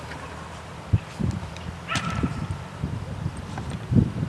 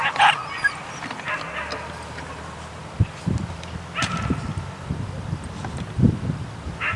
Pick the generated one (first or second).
first